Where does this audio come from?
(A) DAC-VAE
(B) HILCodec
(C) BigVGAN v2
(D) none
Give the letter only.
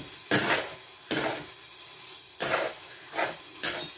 D